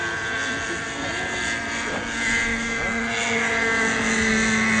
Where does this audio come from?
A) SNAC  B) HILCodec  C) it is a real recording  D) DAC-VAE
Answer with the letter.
C